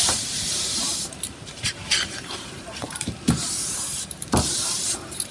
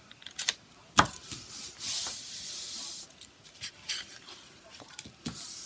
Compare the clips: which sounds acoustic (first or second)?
second